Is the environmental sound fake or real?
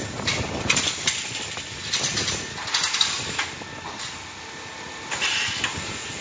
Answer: real